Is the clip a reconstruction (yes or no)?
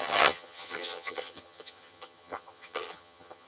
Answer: yes